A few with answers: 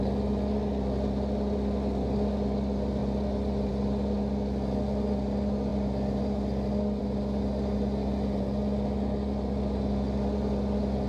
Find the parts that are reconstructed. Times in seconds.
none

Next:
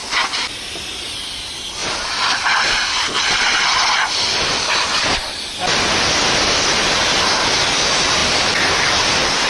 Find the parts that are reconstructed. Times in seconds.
1.8-5.7 (vocoder, BigVGAN v2); 8.2-8.9

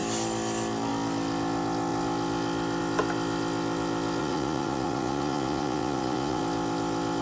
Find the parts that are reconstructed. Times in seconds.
4.2-6.4 (vocoder, Vocos)

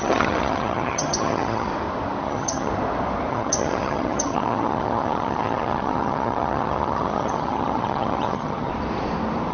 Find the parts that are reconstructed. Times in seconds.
0.0-1.7 (vocoder, HiFi-GAN); 2.2-2.7; 3.3-8.7

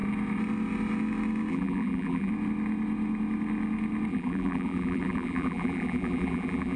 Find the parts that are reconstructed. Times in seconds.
1.5-2.3 (vocoder, BigVGAN v2); 4.1-6.8

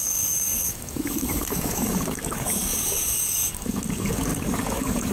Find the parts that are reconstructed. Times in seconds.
0.0-5.1 (codec, DAC)

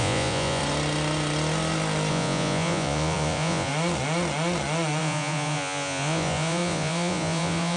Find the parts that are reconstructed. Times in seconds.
0.0-0.6 (vocoder, Vocos); 2.1-3.7; 5.0-7.8

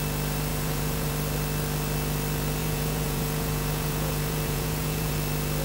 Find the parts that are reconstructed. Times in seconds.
0.5-1.1 (vocoder, Vocos); 2.6-5.1